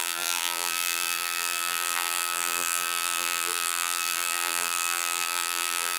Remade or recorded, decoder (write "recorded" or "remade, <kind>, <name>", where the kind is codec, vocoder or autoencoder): remade, vocoder, BigVGAN v2